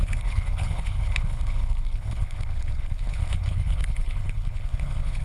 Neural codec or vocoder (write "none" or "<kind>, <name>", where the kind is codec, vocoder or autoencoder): codec, HILCodec